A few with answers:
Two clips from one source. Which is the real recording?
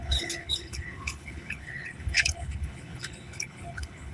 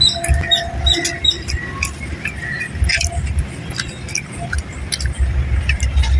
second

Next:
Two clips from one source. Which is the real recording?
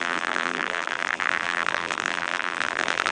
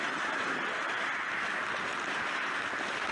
second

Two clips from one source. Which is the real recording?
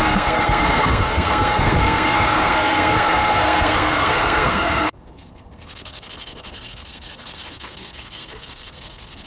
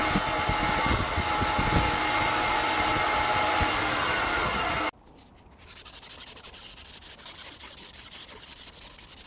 second